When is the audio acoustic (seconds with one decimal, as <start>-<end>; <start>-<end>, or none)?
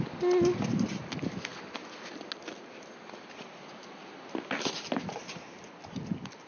0.0-6.5